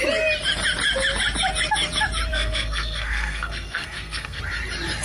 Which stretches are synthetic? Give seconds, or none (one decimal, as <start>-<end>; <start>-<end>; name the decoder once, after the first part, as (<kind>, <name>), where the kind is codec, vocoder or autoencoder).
2.3-4.4 (codec, SNAC)